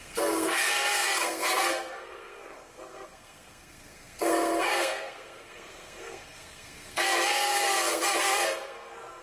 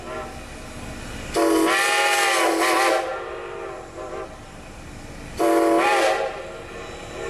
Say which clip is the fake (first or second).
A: first